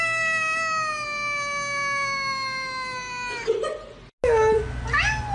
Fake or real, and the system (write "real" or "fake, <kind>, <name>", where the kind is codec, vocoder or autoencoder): real